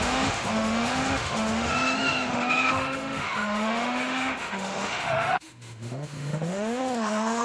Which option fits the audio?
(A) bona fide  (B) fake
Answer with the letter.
B